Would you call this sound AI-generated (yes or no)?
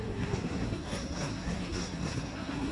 yes